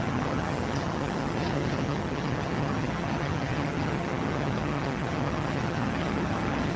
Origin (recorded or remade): remade